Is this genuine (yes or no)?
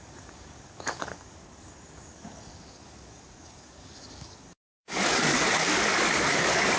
no